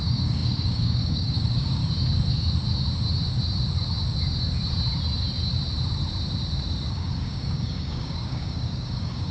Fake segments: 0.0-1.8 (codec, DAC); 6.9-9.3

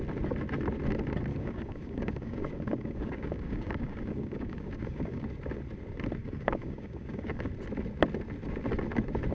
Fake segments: 1.3-5.2 (codec, DAC); 6.2-7.5